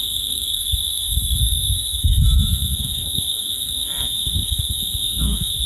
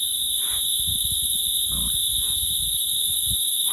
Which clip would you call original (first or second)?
second